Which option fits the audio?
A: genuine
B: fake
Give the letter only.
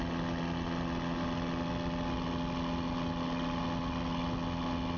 A